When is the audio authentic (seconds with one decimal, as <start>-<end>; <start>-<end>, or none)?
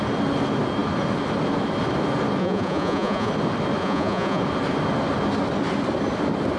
0.0-2.4; 3.3-3.8; 4.4-6.6